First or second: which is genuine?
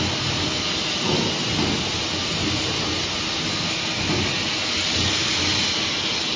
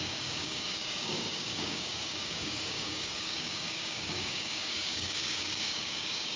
first